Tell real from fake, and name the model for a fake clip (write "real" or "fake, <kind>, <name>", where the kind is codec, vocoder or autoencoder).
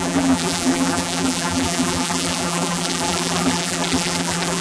fake, vocoder, BigVGAN v2